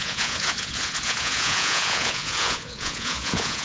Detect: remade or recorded remade